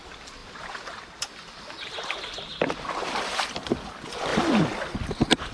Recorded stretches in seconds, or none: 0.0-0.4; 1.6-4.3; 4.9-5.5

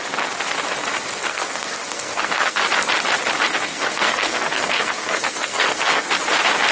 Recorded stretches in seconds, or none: 0.0-1.3; 2.6-3.7; 6.1-6.7

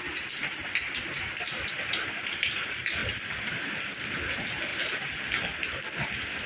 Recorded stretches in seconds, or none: 0.0-6.5

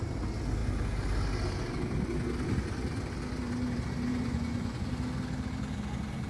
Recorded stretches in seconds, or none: 0.0-4.1; 4.9-6.3

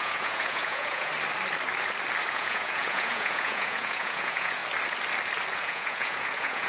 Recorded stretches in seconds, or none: 1.1-2.3; 4.6-5.5

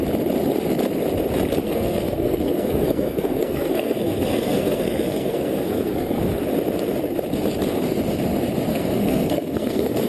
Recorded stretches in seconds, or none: 0.0-1.6; 6.2-8.7

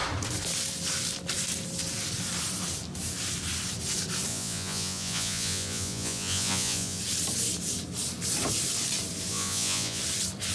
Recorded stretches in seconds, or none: 0.0-4.3; 7.0-9.3; 10.0-10.5

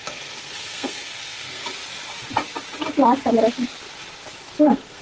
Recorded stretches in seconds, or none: 1.6-4.6